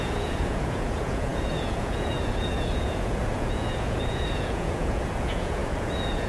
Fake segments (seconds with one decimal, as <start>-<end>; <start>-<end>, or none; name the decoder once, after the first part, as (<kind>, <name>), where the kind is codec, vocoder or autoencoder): 0.0-6.3 (vocoder, Vocos)